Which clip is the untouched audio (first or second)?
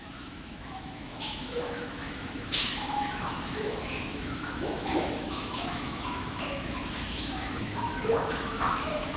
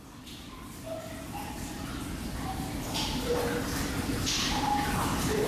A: second